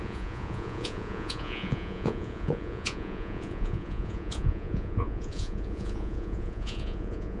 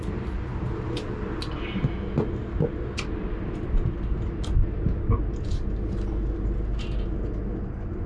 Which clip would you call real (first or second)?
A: second